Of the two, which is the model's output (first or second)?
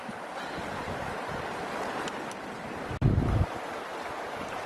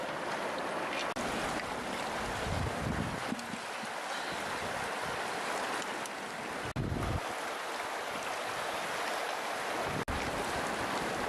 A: first